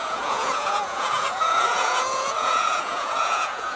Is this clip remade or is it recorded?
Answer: remade